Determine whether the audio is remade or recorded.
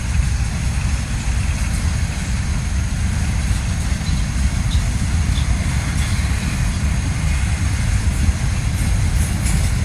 recorded